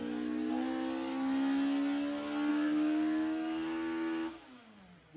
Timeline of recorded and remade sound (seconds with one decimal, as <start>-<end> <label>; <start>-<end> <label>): 0.0-2.5 recorded; 2.5-4.8 remade; 4.8-5.2 recorded